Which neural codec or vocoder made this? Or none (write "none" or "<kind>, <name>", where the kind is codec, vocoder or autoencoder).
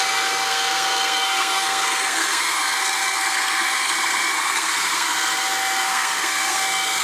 codec, SNAC